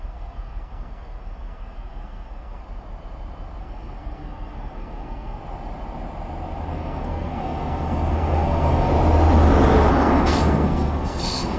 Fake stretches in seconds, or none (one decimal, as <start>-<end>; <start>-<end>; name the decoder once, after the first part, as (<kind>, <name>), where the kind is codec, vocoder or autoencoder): 0.0-2.6 (codec, SNAC); 3.6-5.4; 6.7-8.9; 9.9-11.6